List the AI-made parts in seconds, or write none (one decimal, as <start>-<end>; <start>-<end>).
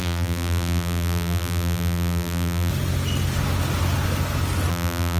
0.0-2.7; 4.7-5.2